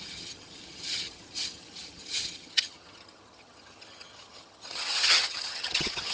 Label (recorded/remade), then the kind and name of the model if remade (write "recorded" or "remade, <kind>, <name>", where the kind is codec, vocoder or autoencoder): remade, vocoder, HiFi-GAN